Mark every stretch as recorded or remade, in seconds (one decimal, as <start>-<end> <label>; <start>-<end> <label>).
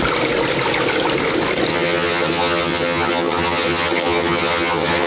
0.0-1.7 recorded; 1.7-5.1 remade